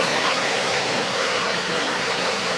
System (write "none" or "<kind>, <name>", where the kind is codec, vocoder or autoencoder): codec, SNAC